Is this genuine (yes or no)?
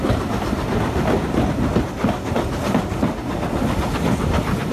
yes